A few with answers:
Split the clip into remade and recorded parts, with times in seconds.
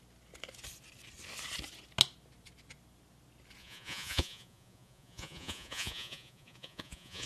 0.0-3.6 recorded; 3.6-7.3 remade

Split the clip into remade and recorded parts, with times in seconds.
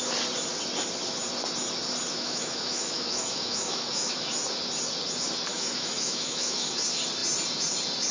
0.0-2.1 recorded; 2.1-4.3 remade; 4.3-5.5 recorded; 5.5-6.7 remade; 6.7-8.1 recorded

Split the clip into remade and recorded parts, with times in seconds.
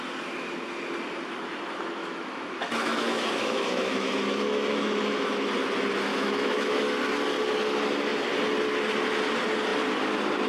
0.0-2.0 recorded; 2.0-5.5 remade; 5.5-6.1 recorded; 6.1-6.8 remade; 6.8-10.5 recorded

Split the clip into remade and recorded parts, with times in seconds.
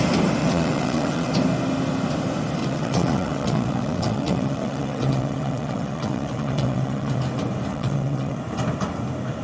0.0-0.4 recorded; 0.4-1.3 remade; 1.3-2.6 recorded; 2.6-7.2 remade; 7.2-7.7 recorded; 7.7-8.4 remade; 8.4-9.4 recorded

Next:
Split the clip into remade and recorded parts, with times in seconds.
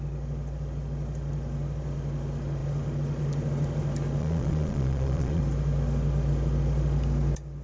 0.0-4.2 recorded; 4.2-5.4 remade; 5.4-7.6 recorded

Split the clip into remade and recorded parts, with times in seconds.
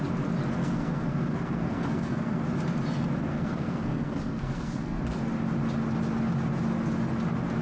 0.0-0.6 recorded; 0.6-2.4 remade; 2.4-3.3 recorded; 3.3-5.0 remade; 5.0-7.6 recorded